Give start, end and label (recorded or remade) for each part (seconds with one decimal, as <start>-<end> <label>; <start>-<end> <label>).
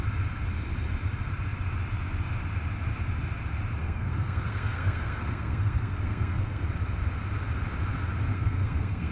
0.0-3.8 recorded; 3.8-6.6 remade; 6.6-8.3 recorded; 8.3-9.1 remade